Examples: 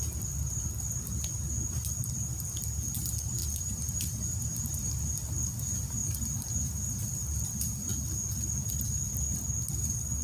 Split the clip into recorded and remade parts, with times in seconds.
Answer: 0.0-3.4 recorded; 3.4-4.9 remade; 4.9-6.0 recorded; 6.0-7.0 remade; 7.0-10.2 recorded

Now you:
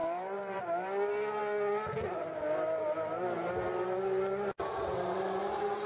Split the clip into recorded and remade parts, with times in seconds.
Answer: 0.0-0.6 remade; 0.6-5.9 recorded

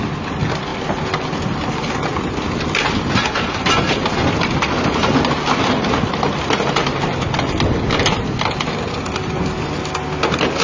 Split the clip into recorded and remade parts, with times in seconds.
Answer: 0.0-10.6 recorded